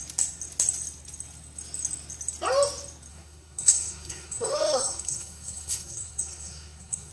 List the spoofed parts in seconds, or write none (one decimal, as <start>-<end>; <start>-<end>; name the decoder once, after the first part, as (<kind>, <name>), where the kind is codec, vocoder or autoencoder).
3.1-7.1 (codec, SNAC)